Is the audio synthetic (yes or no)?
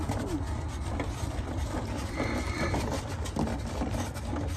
no